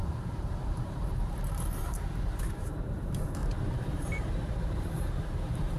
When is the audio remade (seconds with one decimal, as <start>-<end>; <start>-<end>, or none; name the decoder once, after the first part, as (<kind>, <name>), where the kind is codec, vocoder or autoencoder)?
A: 0.0-5.8 (vocoder, BigVGAN v2)